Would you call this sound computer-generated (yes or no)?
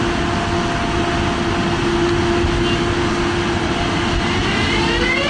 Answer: no